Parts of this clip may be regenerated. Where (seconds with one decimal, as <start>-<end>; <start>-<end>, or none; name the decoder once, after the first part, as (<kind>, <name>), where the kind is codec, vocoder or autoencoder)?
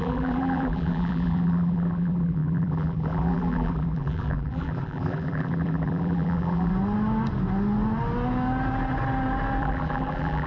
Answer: 0.0-6.7 (vocoder, BigVGAN v2); 9.6-10.5